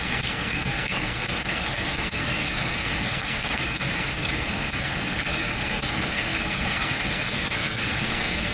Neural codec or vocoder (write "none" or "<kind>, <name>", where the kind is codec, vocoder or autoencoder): codec, SNAC